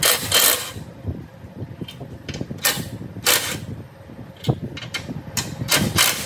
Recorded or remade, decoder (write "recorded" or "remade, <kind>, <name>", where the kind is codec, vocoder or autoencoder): recorded